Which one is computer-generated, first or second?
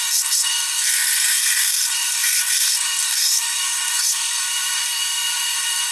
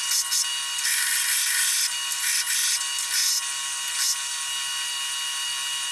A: first